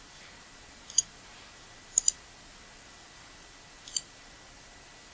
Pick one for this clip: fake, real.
real